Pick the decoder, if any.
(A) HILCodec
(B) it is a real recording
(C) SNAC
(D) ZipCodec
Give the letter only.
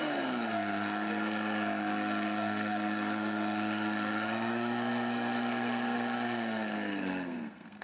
C